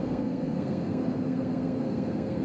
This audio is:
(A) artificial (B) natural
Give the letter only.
A